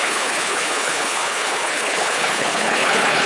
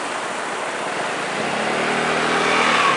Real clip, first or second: second